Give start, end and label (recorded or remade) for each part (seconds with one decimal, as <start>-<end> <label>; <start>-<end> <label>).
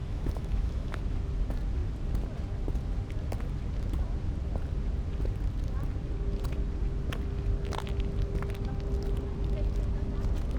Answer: 0.0-1.0 remade; 1.0-10.6 recorded